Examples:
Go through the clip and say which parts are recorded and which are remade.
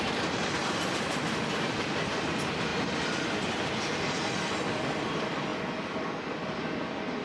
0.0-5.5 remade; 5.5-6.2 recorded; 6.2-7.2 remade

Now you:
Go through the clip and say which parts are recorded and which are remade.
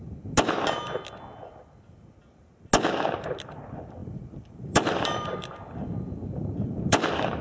0.0-4.0 recorded; 4.0-7.4 remade